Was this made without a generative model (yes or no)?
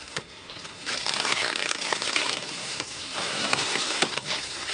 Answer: no